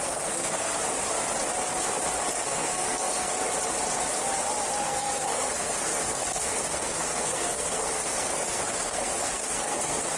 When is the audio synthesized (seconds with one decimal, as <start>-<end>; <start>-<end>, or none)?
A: 0.0-0.7; 2.3-3.4; 4.8-10.2